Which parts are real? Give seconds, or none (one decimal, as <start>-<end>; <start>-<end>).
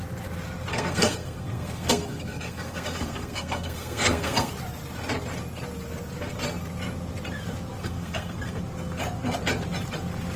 0.0-0.7; 4.5-7.8; 8.6-10.4